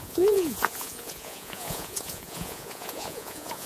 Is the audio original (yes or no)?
no